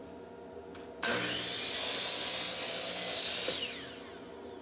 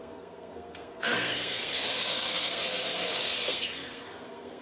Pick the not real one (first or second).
second